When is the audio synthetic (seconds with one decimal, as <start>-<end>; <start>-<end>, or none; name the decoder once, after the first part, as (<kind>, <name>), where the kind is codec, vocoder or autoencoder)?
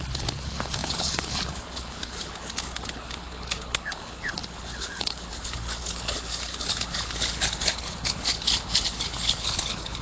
0.0-10.0 (codec, HILCodec)